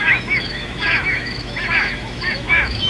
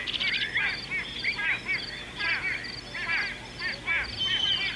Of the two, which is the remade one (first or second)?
first